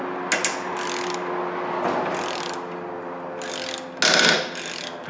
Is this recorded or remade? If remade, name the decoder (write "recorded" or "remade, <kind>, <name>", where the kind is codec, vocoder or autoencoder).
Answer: recorded